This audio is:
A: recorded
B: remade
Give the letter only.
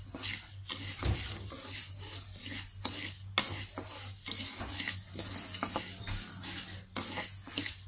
A